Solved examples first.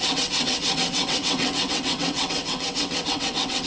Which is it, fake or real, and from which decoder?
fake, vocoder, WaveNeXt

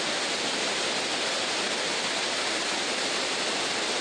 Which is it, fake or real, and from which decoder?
real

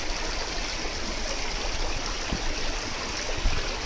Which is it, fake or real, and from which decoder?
real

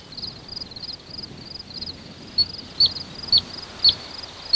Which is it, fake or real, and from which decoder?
real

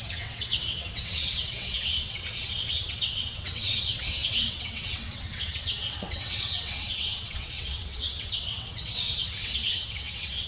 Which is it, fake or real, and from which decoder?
fake, vocoder, WaveNeXt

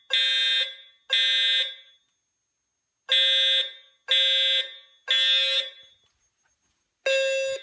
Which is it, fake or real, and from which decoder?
real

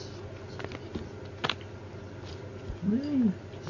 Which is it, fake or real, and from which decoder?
real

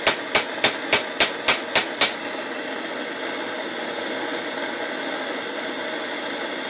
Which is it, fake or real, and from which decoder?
real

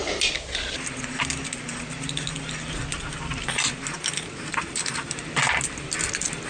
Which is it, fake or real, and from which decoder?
real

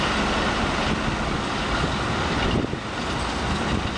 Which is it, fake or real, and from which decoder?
real